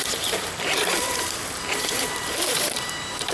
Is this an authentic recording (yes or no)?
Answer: no